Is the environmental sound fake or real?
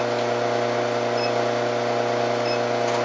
real